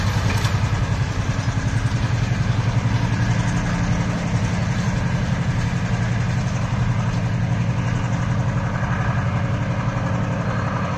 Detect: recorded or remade recorded